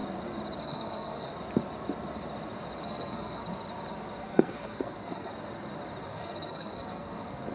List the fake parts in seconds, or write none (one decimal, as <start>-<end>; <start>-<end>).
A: 0.6-1.3; 2.8-3.4; 4.2-5.3; 6.1-7.5